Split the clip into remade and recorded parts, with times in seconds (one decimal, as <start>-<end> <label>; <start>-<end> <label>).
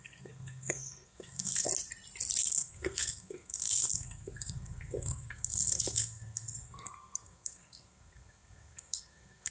0.0-1.7 remade; 1.7-2.4 recorded; 2.4-9.5 remade